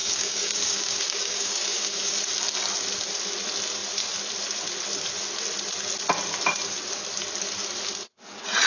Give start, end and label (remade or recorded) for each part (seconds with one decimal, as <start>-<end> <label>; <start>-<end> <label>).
0.0-2.2 remade; 2.2-8.7 recorded

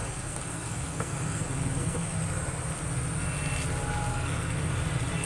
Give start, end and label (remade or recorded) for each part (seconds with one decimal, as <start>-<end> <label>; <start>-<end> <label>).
0.0-2.2 remade; 2.2-4.1 recorded; 4.1-4.7 remade; 4.7-5.3 recorded

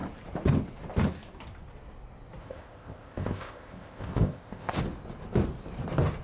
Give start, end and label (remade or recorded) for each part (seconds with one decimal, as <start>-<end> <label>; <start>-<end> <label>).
0.0-2.4 recorded; 2.4-4.8 remade; 4.8-6.2 recorded

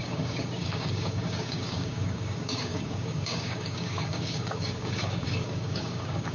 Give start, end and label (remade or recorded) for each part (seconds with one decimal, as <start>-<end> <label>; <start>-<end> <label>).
0.0-6.3 remade